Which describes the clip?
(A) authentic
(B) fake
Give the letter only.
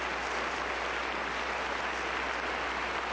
A